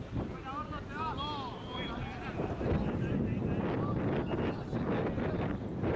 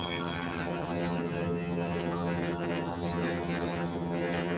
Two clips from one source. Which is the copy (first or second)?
second